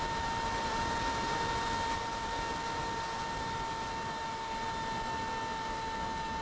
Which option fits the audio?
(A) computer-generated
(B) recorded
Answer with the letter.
B